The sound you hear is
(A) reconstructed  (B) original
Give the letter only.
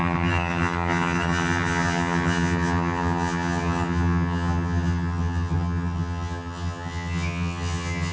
A